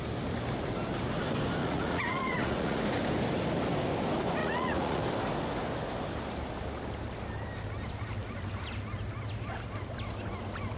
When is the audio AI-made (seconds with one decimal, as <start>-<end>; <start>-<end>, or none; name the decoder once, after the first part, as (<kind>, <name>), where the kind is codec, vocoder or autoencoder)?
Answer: 1.6-2.8 (vocoder, Vocos); 4.4-5.0

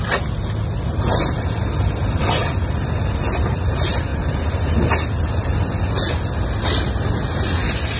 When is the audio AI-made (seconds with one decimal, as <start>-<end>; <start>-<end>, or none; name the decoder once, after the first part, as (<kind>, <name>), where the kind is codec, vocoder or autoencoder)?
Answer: 4.1-4.8 (vocoder, BigVGAN v2)